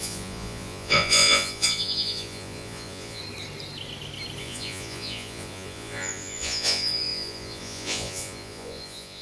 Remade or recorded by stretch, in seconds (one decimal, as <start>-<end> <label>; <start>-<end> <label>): 0.0-3.2 remade; 3.2-4.4 recorded; 4.4-9.2 remade